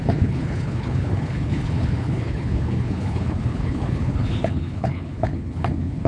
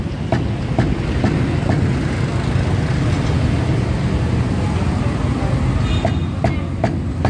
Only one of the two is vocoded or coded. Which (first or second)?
first